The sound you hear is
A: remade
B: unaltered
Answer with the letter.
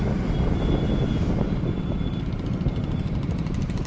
B